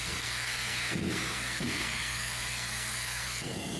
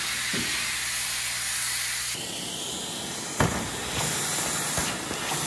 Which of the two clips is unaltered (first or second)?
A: second